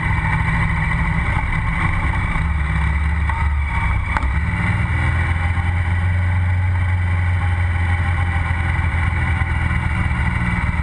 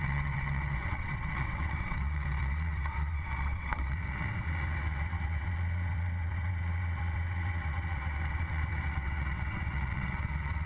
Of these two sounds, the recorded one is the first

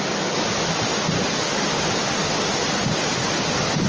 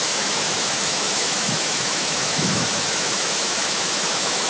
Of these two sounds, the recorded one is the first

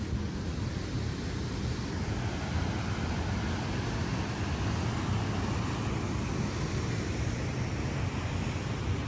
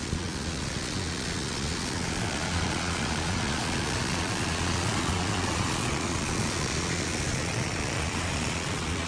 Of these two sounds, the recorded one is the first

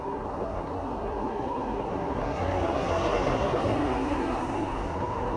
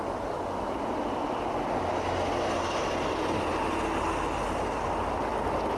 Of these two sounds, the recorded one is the second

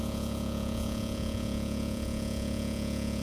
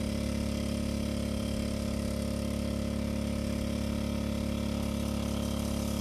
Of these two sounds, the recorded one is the second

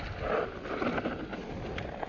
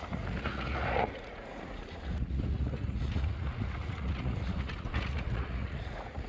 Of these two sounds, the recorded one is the first